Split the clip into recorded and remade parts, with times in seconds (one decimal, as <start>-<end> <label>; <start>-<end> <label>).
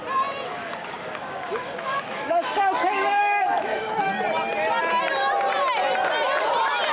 0.0-0.5 recorded; 0.5-3.9 remade; 3.9-6.9 recorded